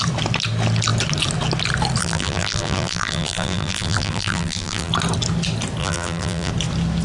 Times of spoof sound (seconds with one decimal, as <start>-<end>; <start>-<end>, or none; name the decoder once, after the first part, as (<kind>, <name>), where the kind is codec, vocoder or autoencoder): 2.0-4.9 (vocoder, BigVGAN v2); 5.8-6.5